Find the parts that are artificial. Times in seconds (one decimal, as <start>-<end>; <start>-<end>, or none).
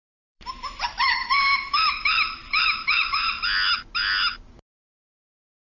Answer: 0.0-3.4